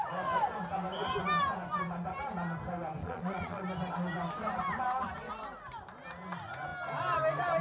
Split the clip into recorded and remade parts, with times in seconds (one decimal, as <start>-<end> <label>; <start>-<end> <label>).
0.0-3.0 recorded; 3.0-3.6 remade; 3.6-7.6 recorded